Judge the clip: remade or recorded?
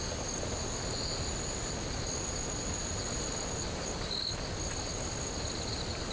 recorded